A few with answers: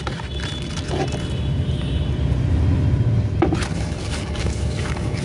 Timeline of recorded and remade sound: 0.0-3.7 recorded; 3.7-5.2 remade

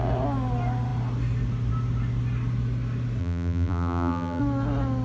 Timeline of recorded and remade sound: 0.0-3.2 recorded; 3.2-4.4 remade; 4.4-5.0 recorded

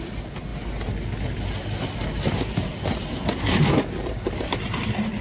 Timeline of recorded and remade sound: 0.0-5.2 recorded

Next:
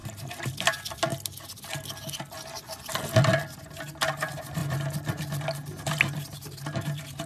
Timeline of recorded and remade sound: 0.0-0.5 remade; 0.5-6.4 recorded; 6.4-7.3 remade

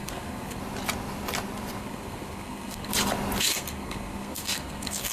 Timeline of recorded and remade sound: 0.0-0.6 remade; 0.6-1.8 recorded; 1.8-2.9 remade; 2.9-3.4 recorded; 3.4-5.1 remade